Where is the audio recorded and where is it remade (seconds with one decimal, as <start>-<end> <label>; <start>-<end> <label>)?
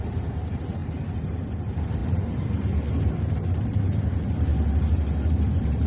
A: 0.0-4.5 remade; 4.5-5.3 recorded; 5.3-5.9 remade